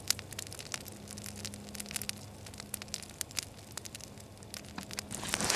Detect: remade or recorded recorded